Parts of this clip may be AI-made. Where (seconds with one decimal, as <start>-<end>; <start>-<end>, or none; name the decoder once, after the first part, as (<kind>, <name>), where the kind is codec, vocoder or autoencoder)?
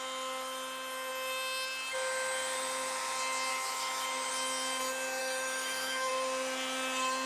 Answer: 3.5-4.3 (autoencoder, DAC-VAE); 5.2-6.1